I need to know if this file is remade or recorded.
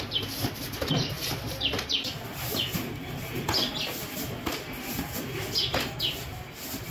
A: recorded